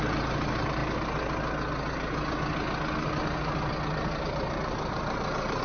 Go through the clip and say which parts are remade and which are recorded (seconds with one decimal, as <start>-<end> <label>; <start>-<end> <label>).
0.0-0.8 remade; 0.8-4.2 recorded; 4.2-5.6 remade